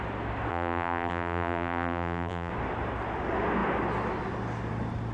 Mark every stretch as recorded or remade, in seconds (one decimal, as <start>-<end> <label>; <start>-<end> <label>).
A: 0.0-0.5 recorded; 0.5-2.5 remade; 2.5-5.1 recorded